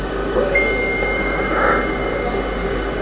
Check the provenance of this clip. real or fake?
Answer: fake